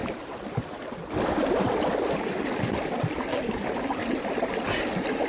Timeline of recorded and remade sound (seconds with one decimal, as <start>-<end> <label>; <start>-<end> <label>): 0.0-5.3 recorded